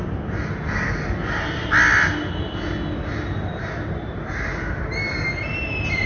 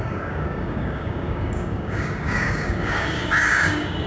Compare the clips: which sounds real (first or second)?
first